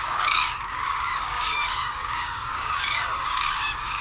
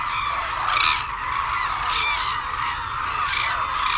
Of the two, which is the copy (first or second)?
first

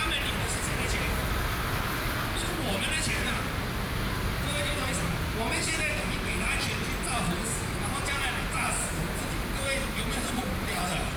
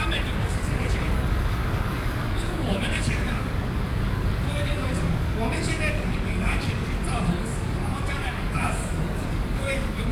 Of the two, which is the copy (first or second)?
second